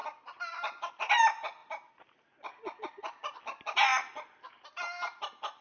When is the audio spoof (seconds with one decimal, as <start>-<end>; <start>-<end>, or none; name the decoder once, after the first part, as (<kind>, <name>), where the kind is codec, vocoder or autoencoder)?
none